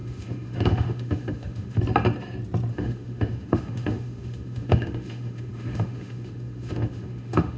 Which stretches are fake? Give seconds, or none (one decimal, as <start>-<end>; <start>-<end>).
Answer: 0.0-1.8; 2.7-7.6

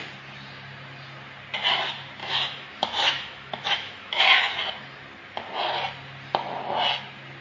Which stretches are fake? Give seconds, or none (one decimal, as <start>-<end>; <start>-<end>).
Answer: 2.2-4.2

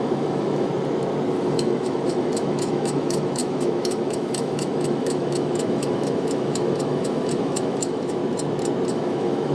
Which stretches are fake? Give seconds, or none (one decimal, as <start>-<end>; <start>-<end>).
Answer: 0.0-0.7; 1.3-8.2; 8.9-9.5

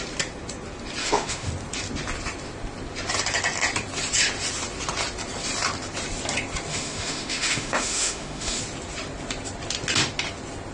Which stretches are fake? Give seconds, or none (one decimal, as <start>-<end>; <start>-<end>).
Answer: 1.0-1.5; 6.7-8.6

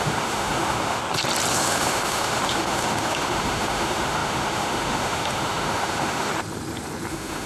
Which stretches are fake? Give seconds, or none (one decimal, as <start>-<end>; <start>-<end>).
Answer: 0.0-1.0; 1.5-6.3; 7.1-7.5

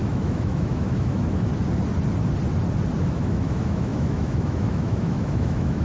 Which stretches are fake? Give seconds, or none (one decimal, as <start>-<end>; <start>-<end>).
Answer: 0.0-1.5; 3.0-5.8